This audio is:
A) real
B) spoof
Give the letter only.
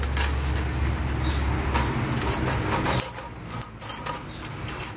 A